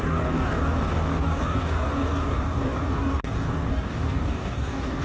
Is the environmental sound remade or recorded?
remade